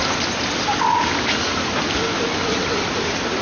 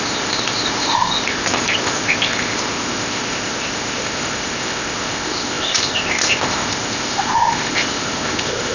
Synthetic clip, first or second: second